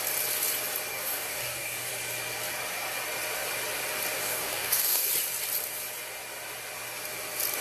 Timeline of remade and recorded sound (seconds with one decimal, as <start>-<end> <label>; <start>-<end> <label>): 0.0-0.9 recorded; 0.9-1.9 remade; 1.9-4.2 recorded; 4.2-5.1 remade; 5.1-7.6 recorded